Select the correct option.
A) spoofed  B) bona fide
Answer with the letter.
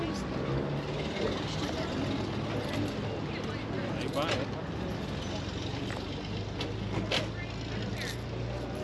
B